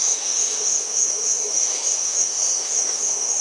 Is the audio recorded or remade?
remade